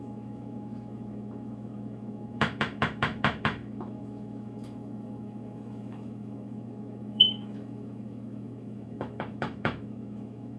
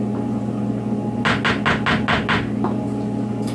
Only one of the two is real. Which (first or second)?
second